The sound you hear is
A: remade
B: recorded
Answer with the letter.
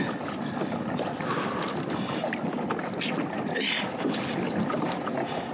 B